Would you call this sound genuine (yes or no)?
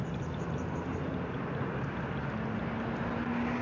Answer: yes